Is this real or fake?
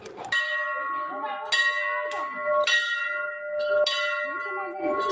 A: real